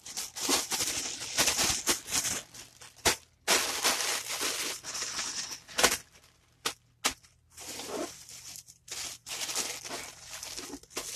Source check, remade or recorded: recorded